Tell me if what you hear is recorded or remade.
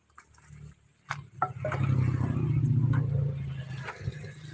recorded